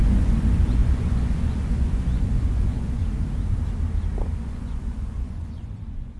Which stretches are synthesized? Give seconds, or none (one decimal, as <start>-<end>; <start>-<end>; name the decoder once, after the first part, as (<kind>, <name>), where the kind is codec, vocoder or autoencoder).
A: 0.0-3.0 (vocoder, Vocos); 4.2-6.2